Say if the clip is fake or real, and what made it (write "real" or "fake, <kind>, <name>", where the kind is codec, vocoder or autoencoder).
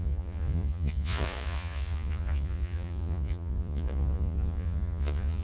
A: fake, vocoder, Vocos